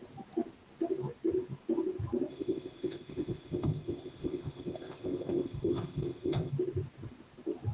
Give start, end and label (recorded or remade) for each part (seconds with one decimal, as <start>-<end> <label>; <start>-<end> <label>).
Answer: 0.0-2.3 recorded; 2.3-6.5 remade; 6.5-7.7 recorded